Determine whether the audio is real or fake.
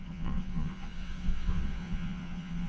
fake